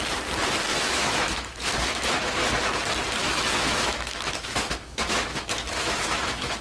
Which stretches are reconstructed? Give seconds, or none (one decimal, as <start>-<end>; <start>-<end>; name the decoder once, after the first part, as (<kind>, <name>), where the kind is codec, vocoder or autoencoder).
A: 0.7-2.5 (autoencoder, DAC-VAE); 3.2-6.6